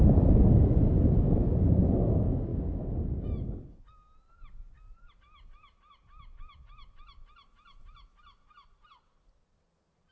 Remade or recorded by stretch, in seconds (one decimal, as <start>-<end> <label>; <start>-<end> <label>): 0.0-10.1 recorded

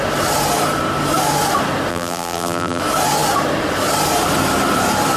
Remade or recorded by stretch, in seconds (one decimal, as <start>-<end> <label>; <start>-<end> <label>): 0.0-1.9 recorded; 1.9-2.8 remade; 2.8-5.2 recorded

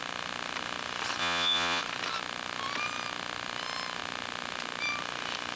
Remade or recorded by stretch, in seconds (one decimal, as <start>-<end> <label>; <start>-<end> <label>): 0.0-1.2 recorded; 1.2-1.8 remade; 1.8-5.6 recorded

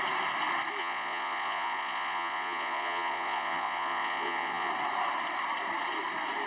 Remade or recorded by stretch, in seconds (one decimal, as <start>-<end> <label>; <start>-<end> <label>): 0.0-0.8 recorded; 0.8-4.7 remade; 4.7-6.5 recorded

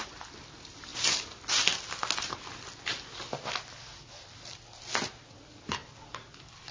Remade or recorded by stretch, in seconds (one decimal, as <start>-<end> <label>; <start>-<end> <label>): 0.0-6.7 recorded

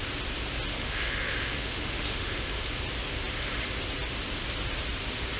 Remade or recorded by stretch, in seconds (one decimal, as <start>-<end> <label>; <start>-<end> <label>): 0.0-0.7 recorded; 0.7-2.8 remade; 2.8-5.4 recorded